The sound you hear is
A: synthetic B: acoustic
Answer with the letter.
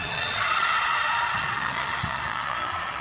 A